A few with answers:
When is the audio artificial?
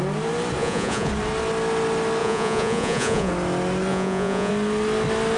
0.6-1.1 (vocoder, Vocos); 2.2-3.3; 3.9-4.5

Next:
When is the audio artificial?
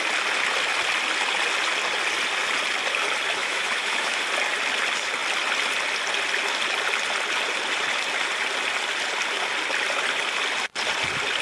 3.4-4.2 (autoencoder, DAC-VAE)